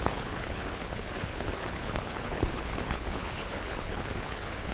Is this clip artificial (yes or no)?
yes